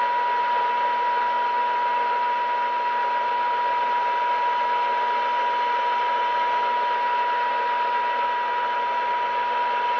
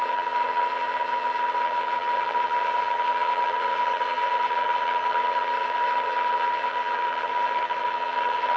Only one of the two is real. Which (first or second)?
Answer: first